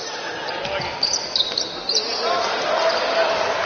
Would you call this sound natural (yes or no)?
yes